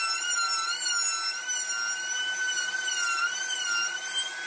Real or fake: real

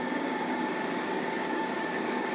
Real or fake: fake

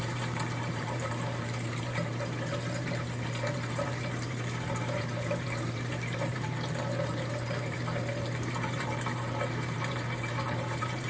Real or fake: fake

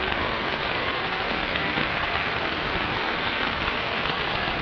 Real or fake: fake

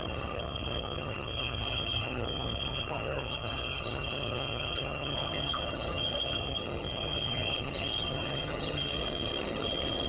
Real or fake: fake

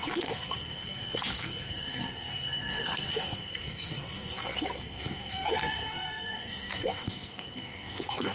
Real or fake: fake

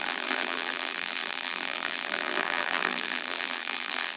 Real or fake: fake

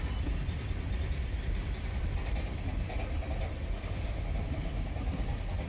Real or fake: real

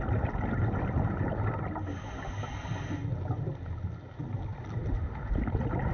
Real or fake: real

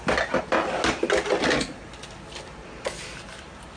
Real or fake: real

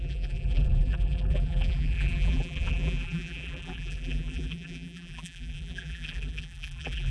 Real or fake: fake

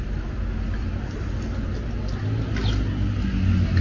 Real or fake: real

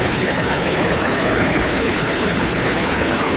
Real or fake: fake